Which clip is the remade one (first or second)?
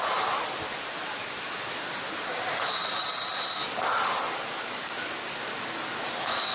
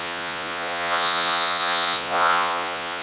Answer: second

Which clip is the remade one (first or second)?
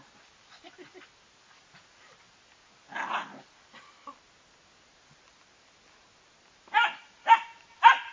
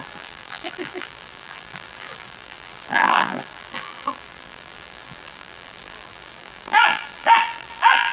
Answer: second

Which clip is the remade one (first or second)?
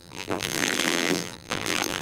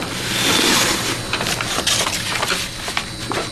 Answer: first